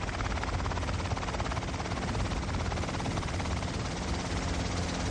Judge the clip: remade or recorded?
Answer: recorded